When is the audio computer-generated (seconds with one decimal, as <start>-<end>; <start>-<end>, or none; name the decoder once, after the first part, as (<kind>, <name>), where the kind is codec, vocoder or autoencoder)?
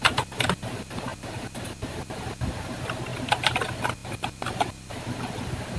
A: 3.1-3.6 (vocoder, BigVGAN v2); 4.0-4.9